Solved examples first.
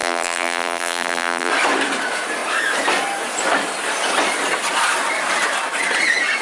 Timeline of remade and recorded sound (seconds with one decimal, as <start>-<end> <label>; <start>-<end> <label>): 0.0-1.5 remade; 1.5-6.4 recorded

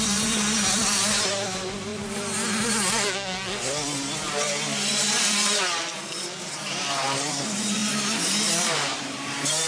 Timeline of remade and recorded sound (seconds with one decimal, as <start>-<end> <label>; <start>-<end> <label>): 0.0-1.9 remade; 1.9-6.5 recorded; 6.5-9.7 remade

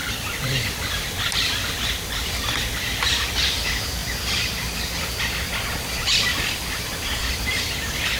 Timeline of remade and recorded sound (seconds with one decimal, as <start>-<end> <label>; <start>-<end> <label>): 0.0-1.2 remade; 1.2-6.3 recorded; 6.3-7.4 remade; 7.4-8.2 recorded

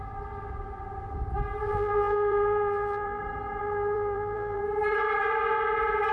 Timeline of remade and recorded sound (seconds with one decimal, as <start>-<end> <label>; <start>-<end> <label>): 0.0-1.7 recorded; 1.7-3.2 remade; 3.2-3.6 recorded; 3.6-4.6 remade; 4.6-6.1 recorded